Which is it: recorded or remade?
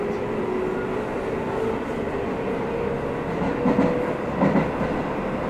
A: recorded